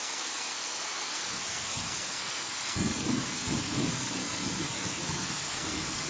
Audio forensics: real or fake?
fake